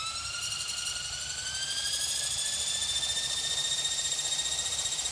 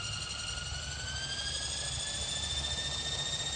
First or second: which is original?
second